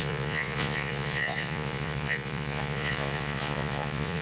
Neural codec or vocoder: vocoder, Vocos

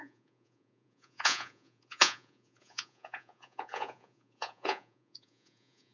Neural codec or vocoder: vocoder, Vocos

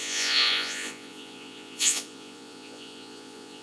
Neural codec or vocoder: vocoder, Vocos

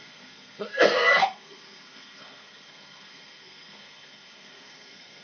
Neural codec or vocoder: codec, SNAC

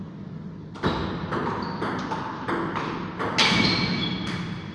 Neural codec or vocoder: none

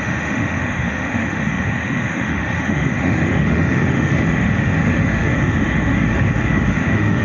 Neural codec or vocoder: autoencoder, DAC-VAE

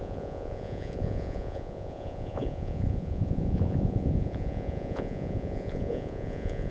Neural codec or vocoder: vocoder, Vocos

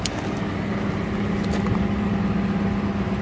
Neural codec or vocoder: none